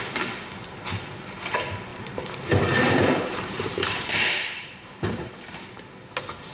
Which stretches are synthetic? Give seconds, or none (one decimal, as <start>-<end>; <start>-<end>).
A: 1.9-5.3